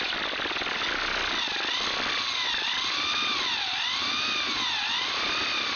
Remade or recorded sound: recorded